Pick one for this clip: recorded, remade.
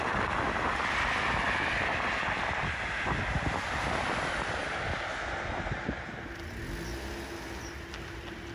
recorded